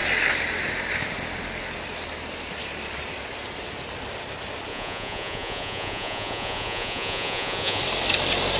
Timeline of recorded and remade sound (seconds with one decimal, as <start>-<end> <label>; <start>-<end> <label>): 0.0-4.7 recorded; 4.7-7.8 remade; 7.8-8.6 recorded